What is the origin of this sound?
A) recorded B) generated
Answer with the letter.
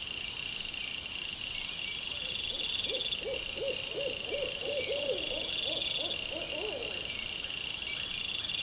A